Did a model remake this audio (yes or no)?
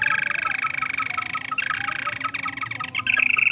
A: no